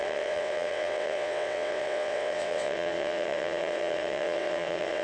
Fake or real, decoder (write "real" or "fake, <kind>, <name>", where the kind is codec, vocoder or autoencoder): fake, vocoder, WaveNeXt